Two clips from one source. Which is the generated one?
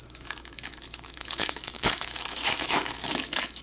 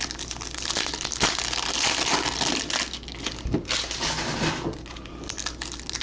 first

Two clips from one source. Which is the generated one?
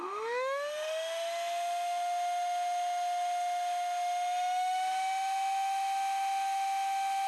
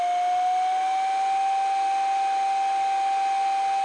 first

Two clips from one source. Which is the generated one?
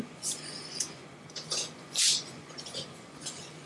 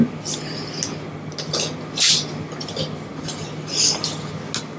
first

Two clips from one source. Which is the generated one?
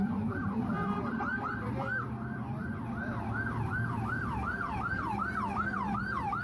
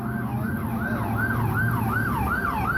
first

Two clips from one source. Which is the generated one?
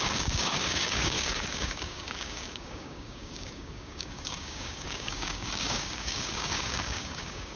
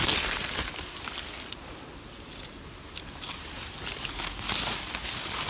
first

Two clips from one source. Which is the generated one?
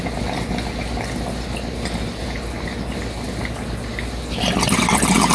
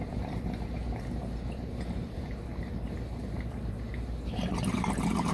second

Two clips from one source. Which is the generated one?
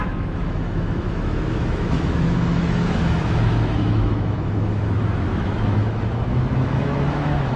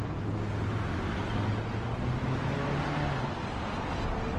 first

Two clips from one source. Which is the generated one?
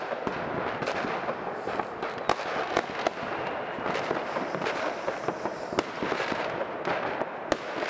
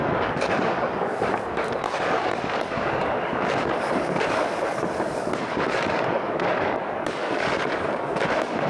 second